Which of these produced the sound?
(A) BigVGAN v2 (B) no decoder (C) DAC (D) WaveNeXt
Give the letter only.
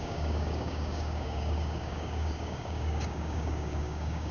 C